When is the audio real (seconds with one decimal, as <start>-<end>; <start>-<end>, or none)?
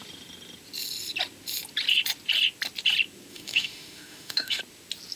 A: 0.0-3.3; 4.6-5.2